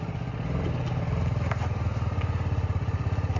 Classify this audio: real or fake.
real